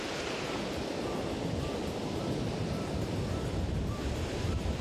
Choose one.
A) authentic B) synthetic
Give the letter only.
B